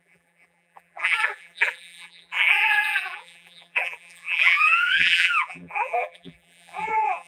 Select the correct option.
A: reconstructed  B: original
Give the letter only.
A